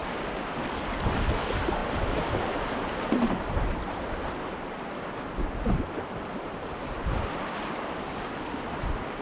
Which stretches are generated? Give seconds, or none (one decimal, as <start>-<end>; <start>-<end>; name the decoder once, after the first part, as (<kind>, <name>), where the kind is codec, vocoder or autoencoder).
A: none